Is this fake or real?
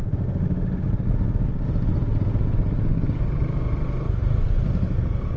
real